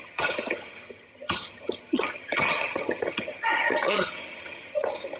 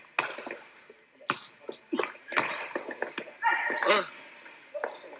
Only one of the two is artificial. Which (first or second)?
first